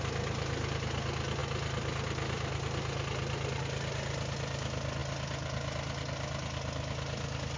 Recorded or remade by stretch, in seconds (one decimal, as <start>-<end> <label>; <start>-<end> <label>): 0.0-7.6 recorded